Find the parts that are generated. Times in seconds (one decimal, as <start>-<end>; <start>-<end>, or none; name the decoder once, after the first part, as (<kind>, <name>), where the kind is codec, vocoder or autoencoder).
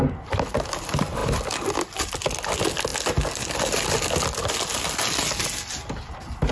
none